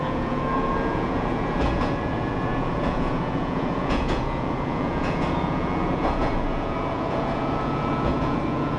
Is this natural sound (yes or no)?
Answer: no